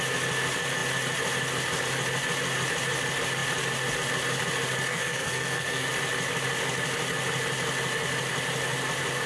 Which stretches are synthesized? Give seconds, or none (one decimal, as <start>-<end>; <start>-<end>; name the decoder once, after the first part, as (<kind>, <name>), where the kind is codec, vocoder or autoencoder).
4.9-5.9 (codec, SNAC)